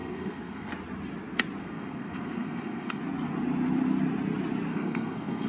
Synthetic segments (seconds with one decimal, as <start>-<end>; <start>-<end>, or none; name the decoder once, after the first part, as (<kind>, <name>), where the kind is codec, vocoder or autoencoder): 0.0-0.7 (codec, SNAC); 1.6-3.0; 4.7-5.5